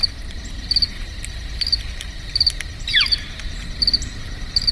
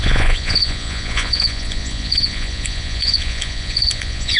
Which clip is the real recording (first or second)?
first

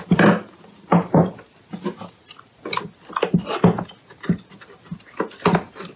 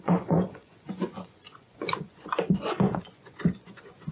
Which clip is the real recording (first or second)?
first